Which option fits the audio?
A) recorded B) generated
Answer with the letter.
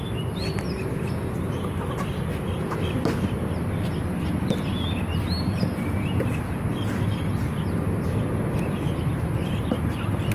A